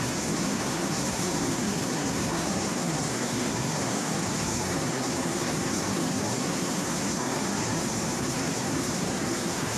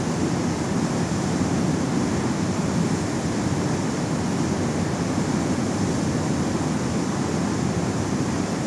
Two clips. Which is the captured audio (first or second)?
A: second